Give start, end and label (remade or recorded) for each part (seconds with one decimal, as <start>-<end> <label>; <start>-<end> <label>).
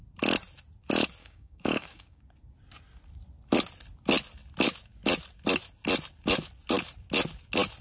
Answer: 0.0-1.2 recorded; 1.2-2.2 remade; 2.2-7.8 recorded